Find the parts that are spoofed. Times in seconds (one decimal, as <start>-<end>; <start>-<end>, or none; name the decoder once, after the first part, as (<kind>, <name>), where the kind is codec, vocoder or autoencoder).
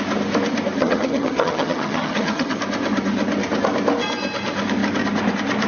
0.8-2.6 (vocoder, HiFi-GAN)